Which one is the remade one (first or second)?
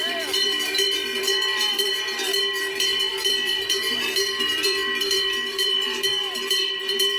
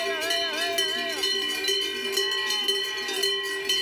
first